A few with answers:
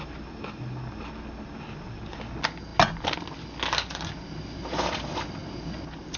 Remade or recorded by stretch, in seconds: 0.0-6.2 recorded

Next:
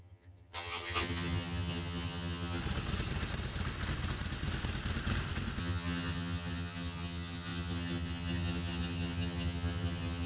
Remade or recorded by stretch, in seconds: 0.0-2.6 remade; 2.6-5.6 recorded; 5.6-10.3 remade

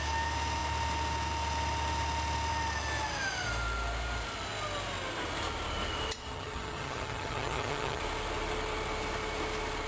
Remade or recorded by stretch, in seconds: 0.0-6.2 recorded; 6.2-8.0 remade; 8.0-9.9 recorded

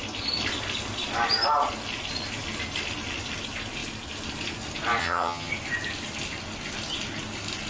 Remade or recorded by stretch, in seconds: 0.0-5.0 recorded; 5.0-5.5 remade; 5.5-7.7 recorded

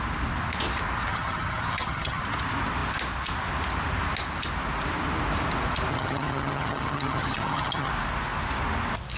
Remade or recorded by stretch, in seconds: 0.0-1.1 recorded; 1.1-2.2 remade; 2.2-5.9 recorded; 5.9-7.9 remade; 7.9-9.2 recorded

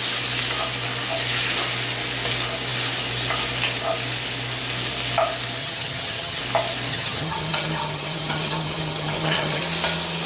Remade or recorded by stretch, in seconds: 0.0-5.6 recorded; 5.6-6.4 remade; 6.4-6.9 recorded; 6.9-9.6 remade; 9.6-10.3 recorded

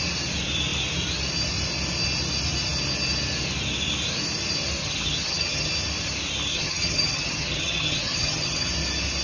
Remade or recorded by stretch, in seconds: 0.0-4.8 recorded; 4.8-5.7 remade; 5.7-6.5 recorded; 6.5-8.7 remade; 8.7-9.2 recorded

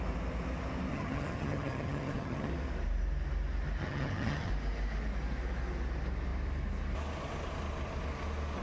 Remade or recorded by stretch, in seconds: 0.0-0.9 recorded; 0.9-2.5 remade; 2.5-3.8 recorded; 3.8-4.5 remade; 4.5-8.6 recorded